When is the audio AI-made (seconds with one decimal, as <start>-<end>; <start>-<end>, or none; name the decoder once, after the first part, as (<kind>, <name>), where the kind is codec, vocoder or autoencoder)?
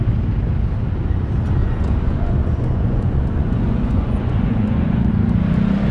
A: 1.6-5.1 (vocoder, Vocos)